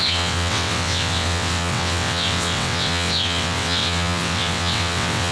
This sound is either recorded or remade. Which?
remade